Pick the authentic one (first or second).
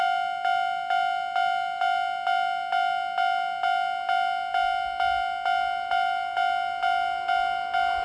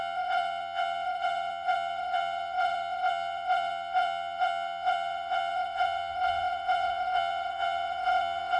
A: first